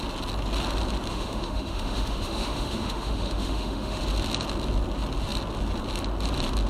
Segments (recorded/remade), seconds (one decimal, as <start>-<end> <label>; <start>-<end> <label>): 0.0-1.1 recorded; 1.1-4.0 remade; 4.0-6.7 recorded